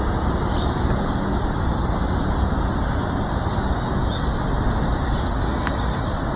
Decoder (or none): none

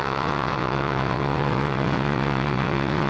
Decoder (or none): vocoder, WaveNeXt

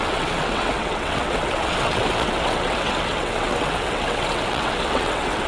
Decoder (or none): vocoder, WaveNeXt